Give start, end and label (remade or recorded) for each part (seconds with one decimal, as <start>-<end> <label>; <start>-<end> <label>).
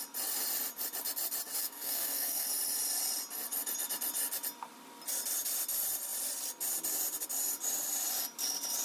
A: 0.0-1.6 recorded; 1.6-2.5 remade; 2.5-8.8 recorded